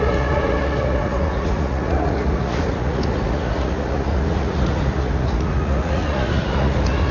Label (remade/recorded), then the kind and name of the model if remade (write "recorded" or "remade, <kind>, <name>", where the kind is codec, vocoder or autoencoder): remade, vocoder, Vocos